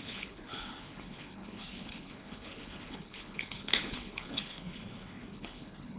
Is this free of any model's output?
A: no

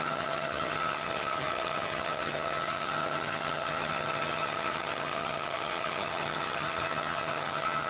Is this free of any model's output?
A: no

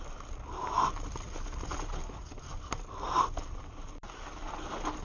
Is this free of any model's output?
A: yes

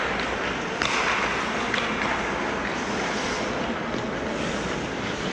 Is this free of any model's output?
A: yes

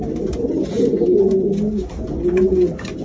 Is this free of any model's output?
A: yes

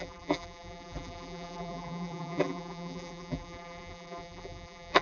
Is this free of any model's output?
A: no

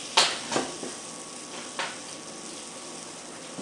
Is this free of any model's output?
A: yes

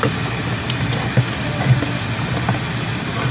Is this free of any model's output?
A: yes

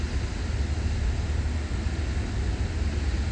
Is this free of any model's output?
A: yes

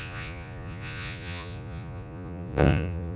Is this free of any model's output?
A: no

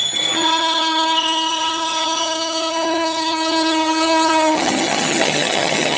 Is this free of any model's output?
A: no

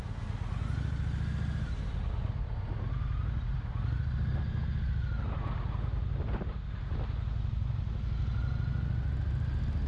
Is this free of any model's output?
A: yes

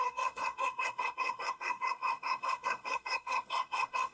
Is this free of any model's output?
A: no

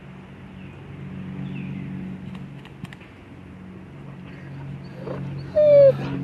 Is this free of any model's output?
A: yes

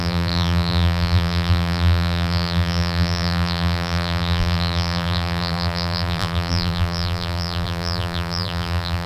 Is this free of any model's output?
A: no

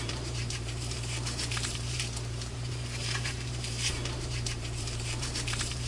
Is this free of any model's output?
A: no